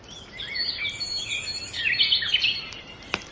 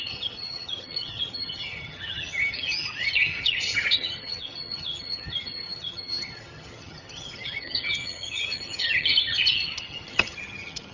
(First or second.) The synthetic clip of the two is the second